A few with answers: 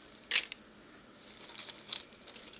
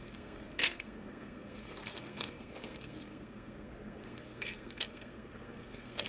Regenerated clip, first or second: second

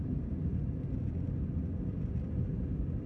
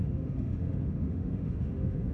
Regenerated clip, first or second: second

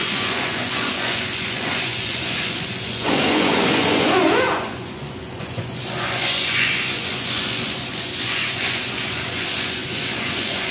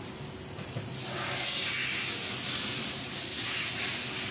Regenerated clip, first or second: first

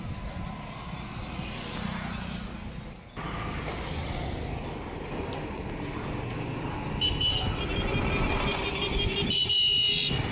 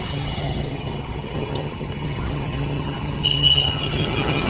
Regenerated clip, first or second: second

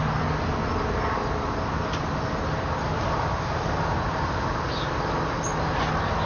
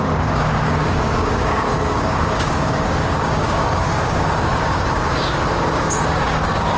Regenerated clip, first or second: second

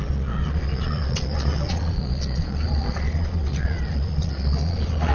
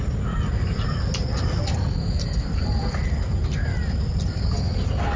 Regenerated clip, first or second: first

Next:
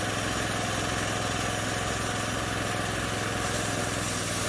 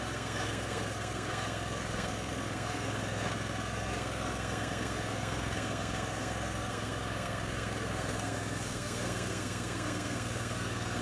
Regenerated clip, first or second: second